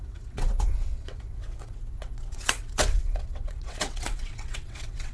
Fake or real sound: fake